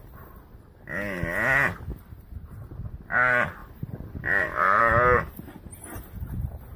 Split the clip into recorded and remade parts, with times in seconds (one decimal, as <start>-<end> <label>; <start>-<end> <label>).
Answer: 0.0-1.9 recorded; 1.9-2.5 remade; 2.5-6.8 recorded